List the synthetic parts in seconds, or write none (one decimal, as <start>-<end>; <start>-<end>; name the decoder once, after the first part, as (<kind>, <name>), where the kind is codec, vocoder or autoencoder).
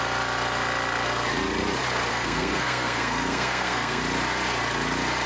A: 2.1-4.0 (codec, SNAC)